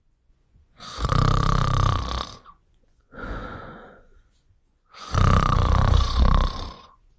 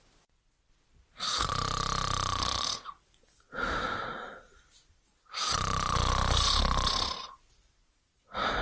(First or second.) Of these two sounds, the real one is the second